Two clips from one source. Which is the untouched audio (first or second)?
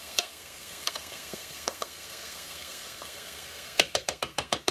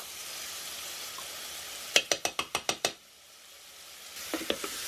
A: second